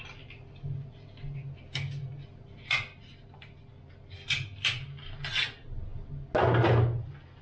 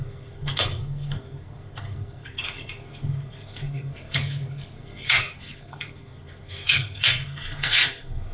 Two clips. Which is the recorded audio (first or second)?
first